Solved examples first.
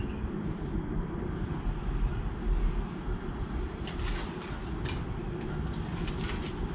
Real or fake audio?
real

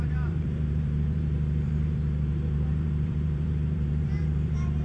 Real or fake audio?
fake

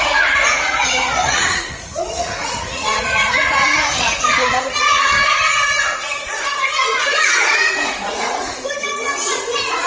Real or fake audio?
fake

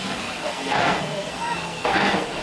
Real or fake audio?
fake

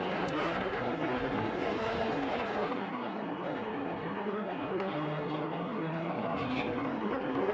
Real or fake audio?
fake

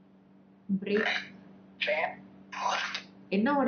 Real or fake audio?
real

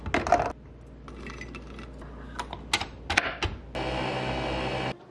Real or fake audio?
real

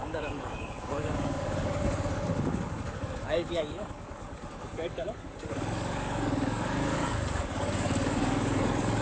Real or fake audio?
fake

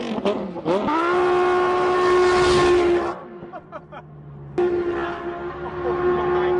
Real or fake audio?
real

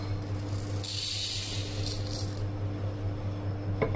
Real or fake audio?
real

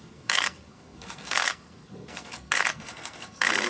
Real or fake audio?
fake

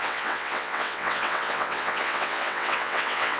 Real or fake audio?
fake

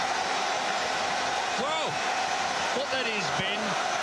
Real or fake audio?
real